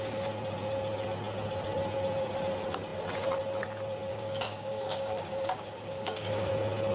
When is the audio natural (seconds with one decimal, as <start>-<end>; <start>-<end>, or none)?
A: 0.0-4.1; 6.5-6.9